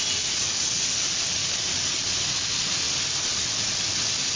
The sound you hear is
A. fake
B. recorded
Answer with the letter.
B